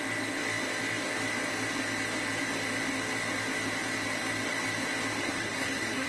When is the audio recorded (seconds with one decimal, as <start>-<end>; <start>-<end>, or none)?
0.0-5.2